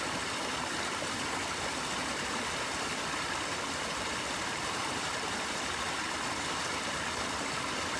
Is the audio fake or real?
fake